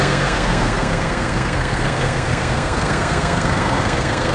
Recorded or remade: remade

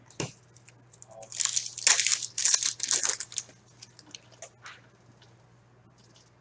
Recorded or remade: recorded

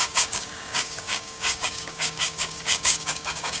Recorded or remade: remade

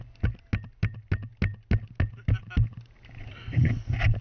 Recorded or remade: recorded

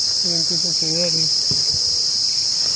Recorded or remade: recorded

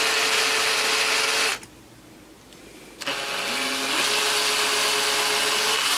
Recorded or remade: recorded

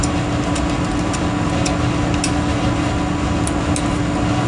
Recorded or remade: recorded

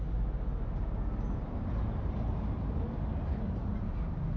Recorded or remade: recorded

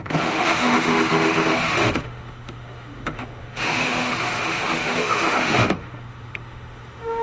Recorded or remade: remade